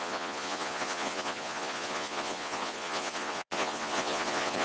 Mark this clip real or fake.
fake